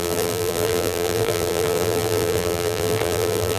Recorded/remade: remade